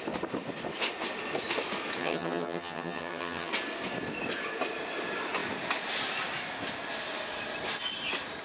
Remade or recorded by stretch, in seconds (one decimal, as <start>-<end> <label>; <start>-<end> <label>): 0.0-2.0 recorded; 2.0-3.5 remade; 3.5-8.4 recorded